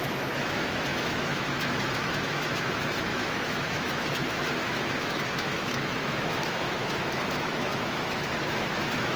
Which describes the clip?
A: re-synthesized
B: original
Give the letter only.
A